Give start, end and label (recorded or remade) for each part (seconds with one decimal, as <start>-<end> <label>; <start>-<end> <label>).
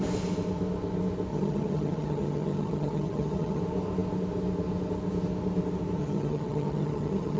0.0-1.3 recorded; 1.3-3.6 remade; 3.6-6.0 recorded; 6.0-7.4 remade